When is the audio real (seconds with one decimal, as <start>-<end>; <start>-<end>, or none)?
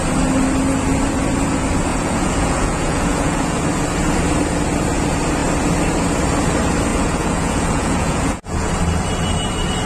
0.0-1.9; 3.6-6.9; 8.7-9.9